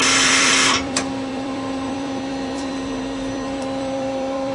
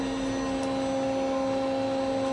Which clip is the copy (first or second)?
first